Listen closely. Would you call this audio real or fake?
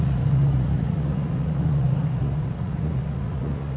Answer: fake